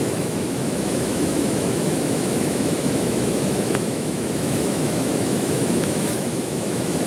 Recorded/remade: remade